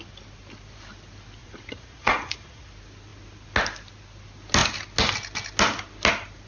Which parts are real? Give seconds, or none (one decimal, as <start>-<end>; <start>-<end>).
0.0-1.4; 2.7-6.5